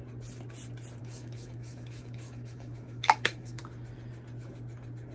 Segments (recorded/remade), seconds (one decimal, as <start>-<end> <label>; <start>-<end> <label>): 0.0-1.0 recorded; 1.0-3.6 remade; 3.6-5.1 recorded

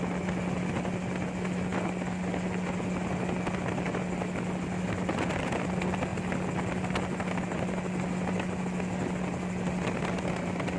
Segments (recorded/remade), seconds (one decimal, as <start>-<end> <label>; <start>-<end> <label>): 0.0-10.8 recorded